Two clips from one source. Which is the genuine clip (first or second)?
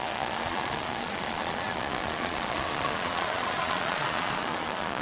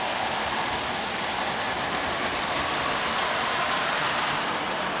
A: second